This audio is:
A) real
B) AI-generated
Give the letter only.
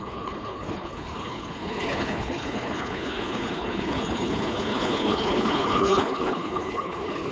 B